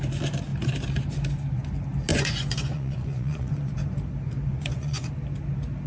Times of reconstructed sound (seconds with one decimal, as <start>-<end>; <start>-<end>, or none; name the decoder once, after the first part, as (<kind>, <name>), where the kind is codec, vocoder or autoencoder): 2.1-3.7 (vocoder, Vocos); 4.5-5.1